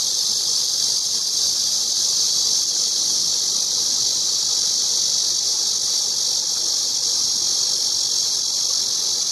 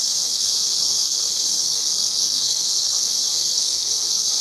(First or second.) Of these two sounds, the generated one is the second